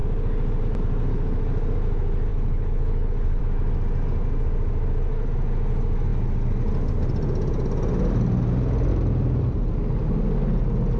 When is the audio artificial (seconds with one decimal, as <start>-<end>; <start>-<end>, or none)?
2.3-3.4